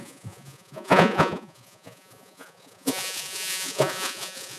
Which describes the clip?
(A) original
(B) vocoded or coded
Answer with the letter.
B